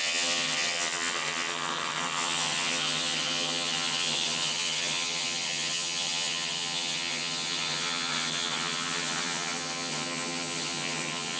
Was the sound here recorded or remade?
remade